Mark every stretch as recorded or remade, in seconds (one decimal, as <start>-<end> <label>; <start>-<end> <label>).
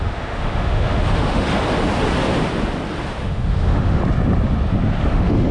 0.0-1.5 remade; 1.5-3.2 recorded; 3.2-4.0 remade; 4.0-5.1 recorded; 5.1-5.5 remade